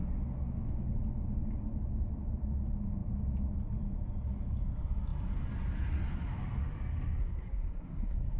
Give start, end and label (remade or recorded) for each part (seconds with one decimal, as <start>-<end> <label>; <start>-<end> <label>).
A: 0.0-7.2 recorded; 7.2-8.4 remade